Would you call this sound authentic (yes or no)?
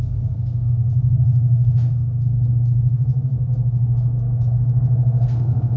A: no